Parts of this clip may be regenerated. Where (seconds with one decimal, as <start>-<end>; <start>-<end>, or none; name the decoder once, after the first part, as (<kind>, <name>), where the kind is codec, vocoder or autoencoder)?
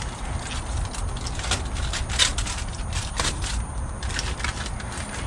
2.3-3.9 (vocoder, BigVGAN v2)